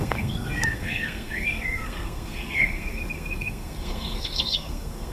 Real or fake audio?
fake